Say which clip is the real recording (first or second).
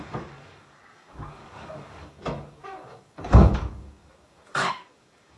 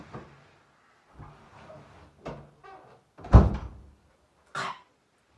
second